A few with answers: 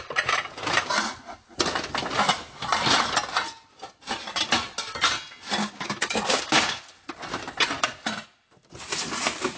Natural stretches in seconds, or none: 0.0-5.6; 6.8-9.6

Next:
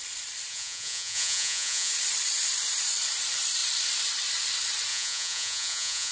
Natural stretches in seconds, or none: 0.0-0.5; 1.9-4.9

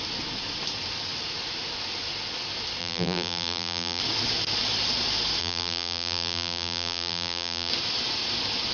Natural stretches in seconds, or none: 0.0-2.8; 4.0-5.4; 7.7-8.7

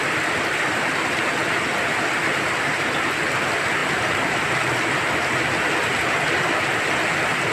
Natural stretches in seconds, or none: 0.0-3.8; 4.6-7.5